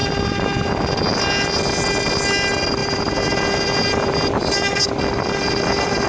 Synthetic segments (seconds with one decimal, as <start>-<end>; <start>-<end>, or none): 0.0-0.8; 2.8-4.8